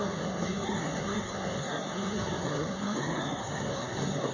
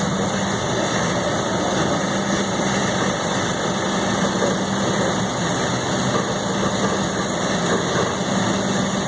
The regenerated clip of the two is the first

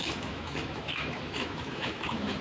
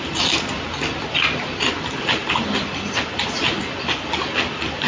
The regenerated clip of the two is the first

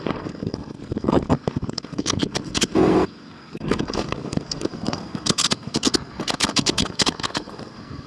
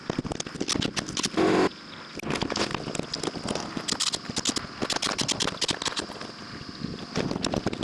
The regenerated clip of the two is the first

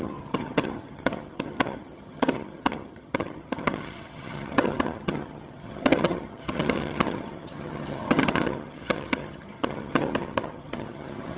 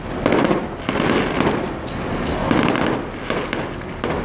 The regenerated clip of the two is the first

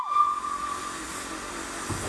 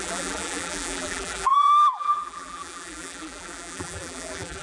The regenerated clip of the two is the second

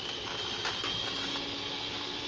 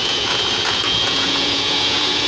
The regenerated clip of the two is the second